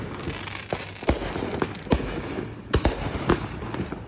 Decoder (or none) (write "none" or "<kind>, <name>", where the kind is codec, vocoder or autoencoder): none